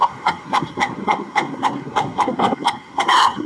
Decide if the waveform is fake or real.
fake